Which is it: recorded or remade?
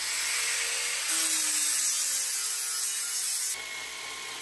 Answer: recorded